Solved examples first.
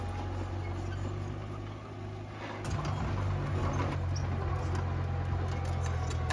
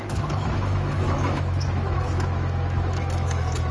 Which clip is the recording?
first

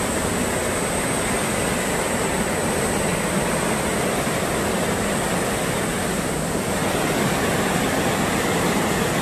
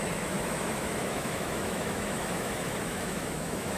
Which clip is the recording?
first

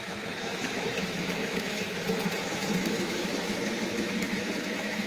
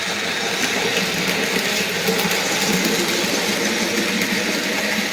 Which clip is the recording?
second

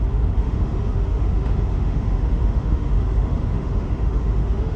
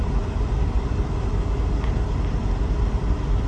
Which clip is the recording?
second